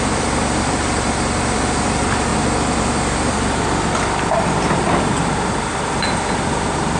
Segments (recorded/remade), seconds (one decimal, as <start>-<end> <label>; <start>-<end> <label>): 0.0-2.3 remade; 2.3-6.5 recorded; 6.5-7.0 remade